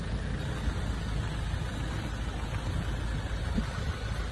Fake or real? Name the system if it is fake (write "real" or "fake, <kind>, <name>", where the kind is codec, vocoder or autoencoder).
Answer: real